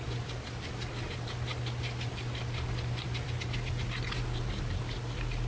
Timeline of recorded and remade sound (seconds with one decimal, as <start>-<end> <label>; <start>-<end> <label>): 0.0-5.5 recorded